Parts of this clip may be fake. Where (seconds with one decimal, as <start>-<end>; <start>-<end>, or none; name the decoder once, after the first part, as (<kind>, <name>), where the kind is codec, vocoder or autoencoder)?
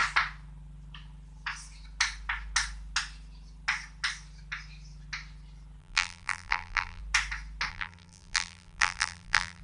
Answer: 5.8-7.0 (vocoder, BigVGAN v2); 7.7-9.6